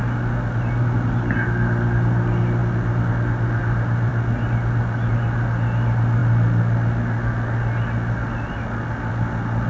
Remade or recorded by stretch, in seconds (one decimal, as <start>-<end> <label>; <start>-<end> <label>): 0.0-9.7 recorded